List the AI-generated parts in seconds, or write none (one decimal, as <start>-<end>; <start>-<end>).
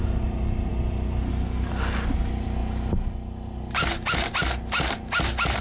none